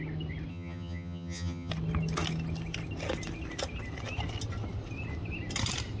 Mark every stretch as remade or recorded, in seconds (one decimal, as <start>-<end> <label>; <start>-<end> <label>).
0.0-0.5 recorded; 0.5-1.7 remade; 1.7-6.0 recorded